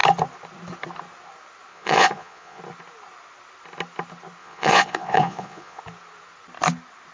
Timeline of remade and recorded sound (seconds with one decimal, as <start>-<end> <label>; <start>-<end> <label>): 0.0-1.7 recorded; 1.7-2.6 remade; 2.6-4.4 recorded; 4.4-5.8 remade; 5.8-7.1 recorded